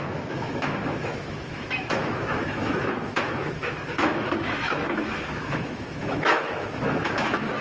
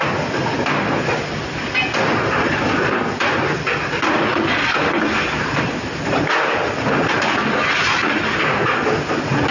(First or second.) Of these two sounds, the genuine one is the second